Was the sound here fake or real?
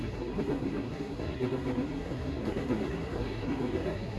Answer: fake